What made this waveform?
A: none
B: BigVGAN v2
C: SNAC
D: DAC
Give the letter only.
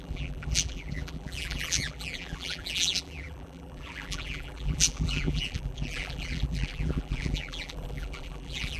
B